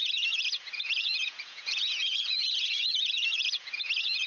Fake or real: fake